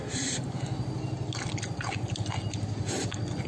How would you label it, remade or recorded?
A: recorded